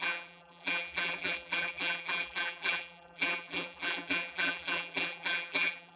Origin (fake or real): fake